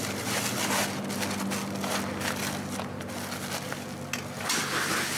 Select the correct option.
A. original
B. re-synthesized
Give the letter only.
A